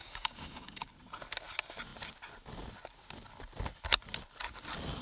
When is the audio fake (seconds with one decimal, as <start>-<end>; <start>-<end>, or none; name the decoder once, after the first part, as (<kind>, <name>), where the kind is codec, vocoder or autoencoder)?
0.0-0.9 (codec, DAC)